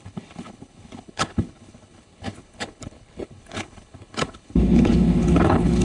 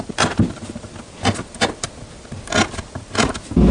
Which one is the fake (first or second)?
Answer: first